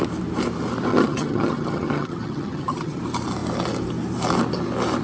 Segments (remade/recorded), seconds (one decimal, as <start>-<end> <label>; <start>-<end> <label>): 0.0-0.9 recorded; 0.9-3.0 remade; 3.0-5.0 recorded